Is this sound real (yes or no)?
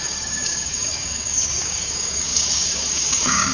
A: no